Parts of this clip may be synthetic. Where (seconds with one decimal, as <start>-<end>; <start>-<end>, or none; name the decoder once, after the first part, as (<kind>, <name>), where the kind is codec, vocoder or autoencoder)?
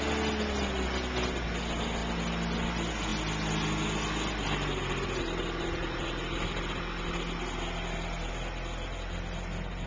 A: none